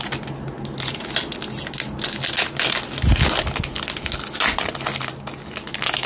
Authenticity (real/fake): real